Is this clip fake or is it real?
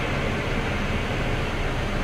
real